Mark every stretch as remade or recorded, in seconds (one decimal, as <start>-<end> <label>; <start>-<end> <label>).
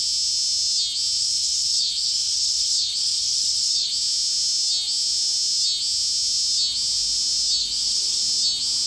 0.0-1.2 recorded; 1.2-3.9 remade; 3.9-7.6 recorded; 7.6-8.2 remade; 8.2-8.9 recorded